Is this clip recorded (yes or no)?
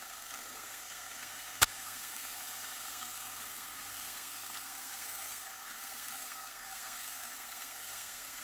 no